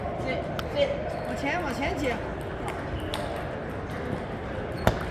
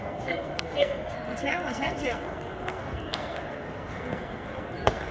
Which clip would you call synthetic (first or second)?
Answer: second